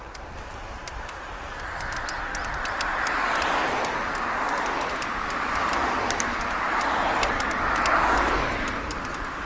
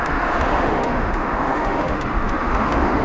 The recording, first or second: first